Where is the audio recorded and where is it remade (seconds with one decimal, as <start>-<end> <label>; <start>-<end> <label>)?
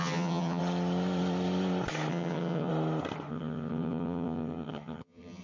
0.0-0.6 remade; 0.6-2.1 recorded; 2.1-2.7 remade; 2.7-3.3 recorded; 3.3-5.4 remade